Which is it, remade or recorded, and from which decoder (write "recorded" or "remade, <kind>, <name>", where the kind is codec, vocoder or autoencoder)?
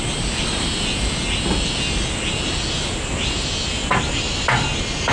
recorded